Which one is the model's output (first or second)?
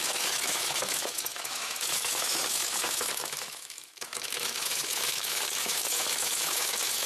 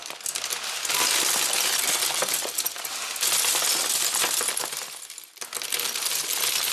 first